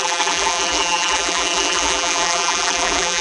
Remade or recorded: remade